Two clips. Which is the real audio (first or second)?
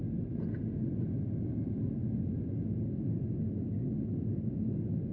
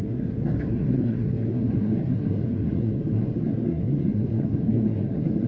first